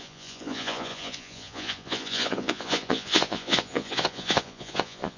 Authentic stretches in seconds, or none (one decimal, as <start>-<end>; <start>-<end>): none